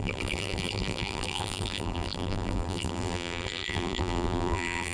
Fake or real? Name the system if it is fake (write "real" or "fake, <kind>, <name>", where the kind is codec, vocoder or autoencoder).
fake, vocoder, BigVGAN v2